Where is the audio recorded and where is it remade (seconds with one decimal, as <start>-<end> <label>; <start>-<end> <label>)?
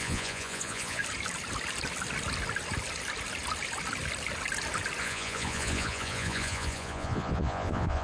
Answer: 0.0-1.0 remade; 1.0-5.0 recorded; 5.0-8.0 remade